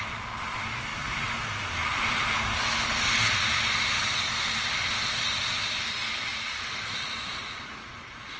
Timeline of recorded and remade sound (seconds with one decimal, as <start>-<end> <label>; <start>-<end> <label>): 0.0-6.3 recorded; 6.3-8.0 remade; 8.0-8.4 recorded